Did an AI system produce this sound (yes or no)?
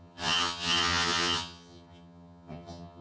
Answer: yes